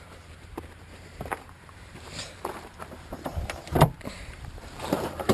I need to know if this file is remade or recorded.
remade